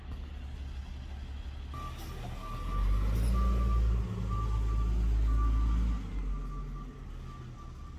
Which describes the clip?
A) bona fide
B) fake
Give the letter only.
A